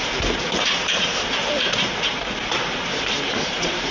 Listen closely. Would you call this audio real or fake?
fake